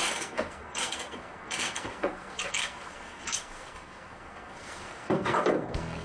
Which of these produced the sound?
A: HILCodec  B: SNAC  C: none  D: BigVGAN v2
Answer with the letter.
B